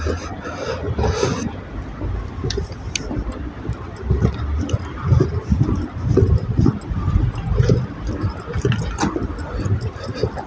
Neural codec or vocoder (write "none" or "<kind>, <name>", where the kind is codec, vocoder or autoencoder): none